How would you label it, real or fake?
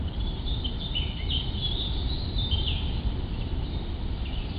fake